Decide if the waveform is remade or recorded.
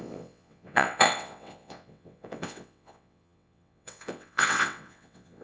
remade